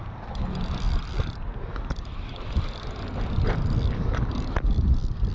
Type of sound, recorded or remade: recorded